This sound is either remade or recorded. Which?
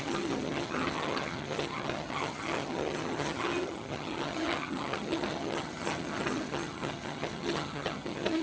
remade